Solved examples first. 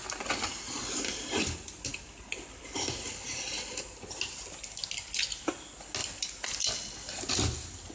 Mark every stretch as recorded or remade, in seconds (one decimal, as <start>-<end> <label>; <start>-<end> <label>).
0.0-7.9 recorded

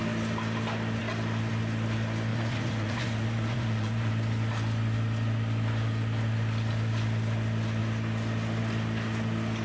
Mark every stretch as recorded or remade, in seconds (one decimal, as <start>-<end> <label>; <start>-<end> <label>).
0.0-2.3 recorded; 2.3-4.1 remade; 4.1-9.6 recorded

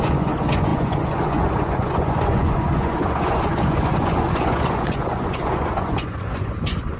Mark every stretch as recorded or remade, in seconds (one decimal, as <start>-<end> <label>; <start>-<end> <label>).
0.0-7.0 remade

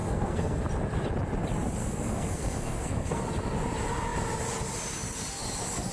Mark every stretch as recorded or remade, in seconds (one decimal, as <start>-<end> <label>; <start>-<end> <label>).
0.0-0.6 remade; 0.6-1.8 recorded; 1.8-3.2 remade; 3.2-5.9 recorded

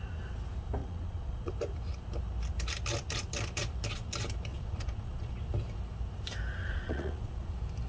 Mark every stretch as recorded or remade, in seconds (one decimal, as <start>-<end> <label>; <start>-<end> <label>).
0.0-0.8 recorded; 0.8-1.5 remade; 1.5-4.5 recorded; 4.5-5.3 remade; 5.3-6.6 recorded; 6.6-7.5 remade; 7.5-7.9 recorded

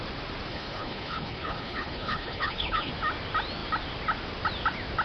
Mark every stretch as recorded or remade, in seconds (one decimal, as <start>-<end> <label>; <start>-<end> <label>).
0.0-0.5 recorded; 0.5-2.9 remade; 2.9-5.0 recorded

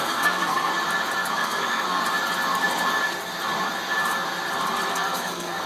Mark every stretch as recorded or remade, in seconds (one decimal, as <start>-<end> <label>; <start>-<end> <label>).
0.0-0.7 remade; 0.7-1.3 recorded; 1.3-2.0 remade; 2.0-4.9 recorded; 4.9-5.7 remade